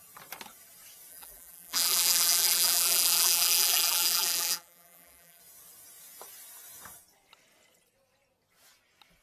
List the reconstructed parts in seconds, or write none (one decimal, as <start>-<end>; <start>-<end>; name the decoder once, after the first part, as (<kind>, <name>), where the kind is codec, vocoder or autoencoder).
1.1-5.4 (vocoder, BigVGAN v2)